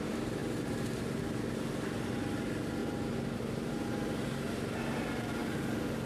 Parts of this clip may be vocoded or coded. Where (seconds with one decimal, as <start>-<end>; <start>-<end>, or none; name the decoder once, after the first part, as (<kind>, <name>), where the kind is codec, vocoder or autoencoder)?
2.8-3.7 (vocoder, BigVGAN v2)